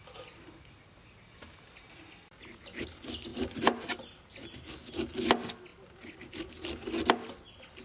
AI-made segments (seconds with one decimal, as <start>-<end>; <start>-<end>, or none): none